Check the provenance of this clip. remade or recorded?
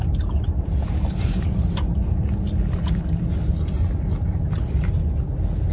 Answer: recorded